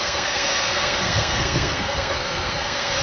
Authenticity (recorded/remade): remade